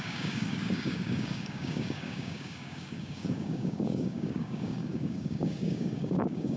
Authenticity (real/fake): fake